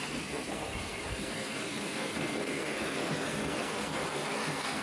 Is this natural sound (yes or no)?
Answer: no